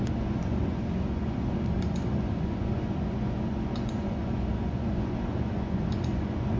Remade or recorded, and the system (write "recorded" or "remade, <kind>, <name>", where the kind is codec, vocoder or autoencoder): remade, vocoder, Vocos